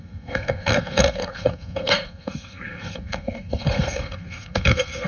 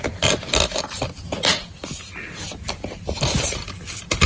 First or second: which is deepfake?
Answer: first